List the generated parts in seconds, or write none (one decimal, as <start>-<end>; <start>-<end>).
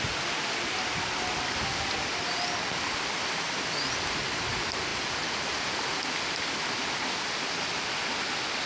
none